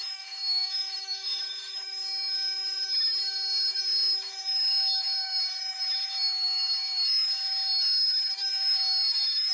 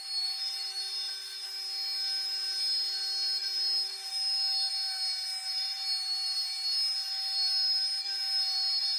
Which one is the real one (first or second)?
second